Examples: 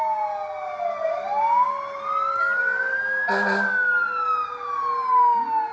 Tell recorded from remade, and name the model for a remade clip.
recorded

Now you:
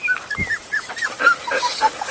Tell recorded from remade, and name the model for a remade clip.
recorded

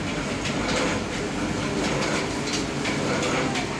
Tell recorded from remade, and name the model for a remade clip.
recorded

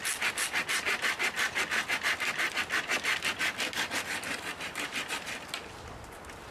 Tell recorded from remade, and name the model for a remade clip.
recorded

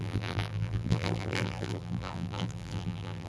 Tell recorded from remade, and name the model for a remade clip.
remade, vocoder, BigVGAN v2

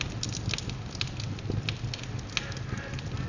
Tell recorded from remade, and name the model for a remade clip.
recorded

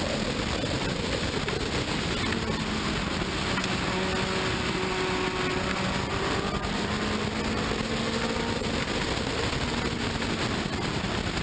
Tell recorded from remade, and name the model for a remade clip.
recorded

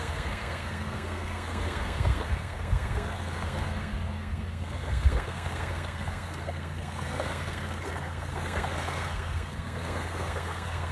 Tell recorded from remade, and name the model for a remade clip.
remade, codec, SNAC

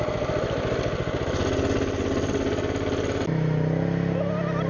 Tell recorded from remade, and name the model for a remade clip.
recorded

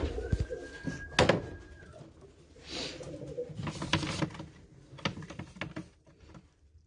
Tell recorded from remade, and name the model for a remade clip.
recorded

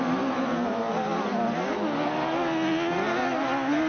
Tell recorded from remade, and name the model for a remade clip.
recorded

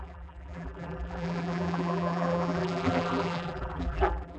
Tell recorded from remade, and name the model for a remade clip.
remade, vocoder, BigVGAN v2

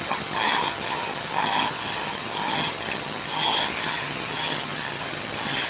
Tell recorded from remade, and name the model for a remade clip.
remade, vocoder, HiFi-GAN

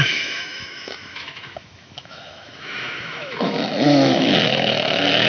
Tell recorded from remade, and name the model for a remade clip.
remade, autoencoder, DAC-VAE